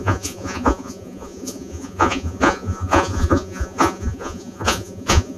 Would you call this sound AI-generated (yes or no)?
yes